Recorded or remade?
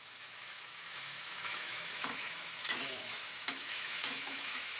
remade